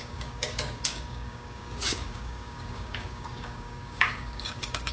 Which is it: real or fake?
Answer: fake